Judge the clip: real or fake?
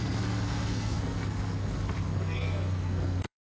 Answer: fake